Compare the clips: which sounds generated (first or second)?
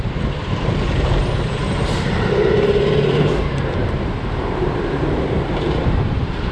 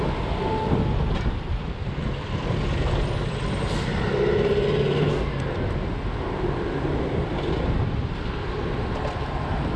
first